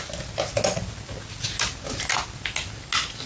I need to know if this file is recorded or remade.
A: recorded